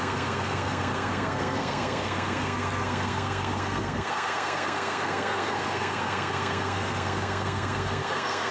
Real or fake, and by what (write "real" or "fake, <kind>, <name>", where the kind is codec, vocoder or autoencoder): fake, codec, SNAC